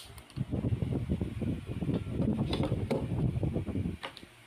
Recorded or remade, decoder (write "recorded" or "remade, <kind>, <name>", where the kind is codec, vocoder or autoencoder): recorded